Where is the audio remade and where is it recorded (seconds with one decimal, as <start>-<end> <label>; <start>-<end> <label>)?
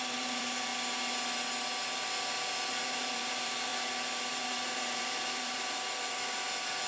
0.0-0.7 remade; 0.7-2.7 recorded; 2.7-3.7 remade; 3.7-4.4 recorded; 4.4-6.9 remade